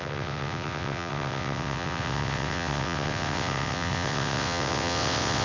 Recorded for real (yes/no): no